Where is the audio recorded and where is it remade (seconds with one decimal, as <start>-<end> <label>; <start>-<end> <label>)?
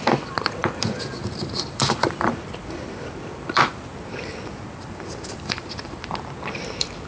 0.0-0.6 recorded; 0.6-3.7 remade; 3.7-7.1 recorded